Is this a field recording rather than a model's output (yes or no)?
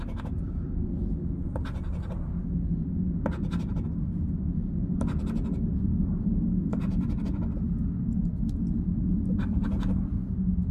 yes